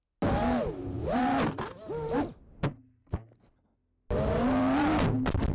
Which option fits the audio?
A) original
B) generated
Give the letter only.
A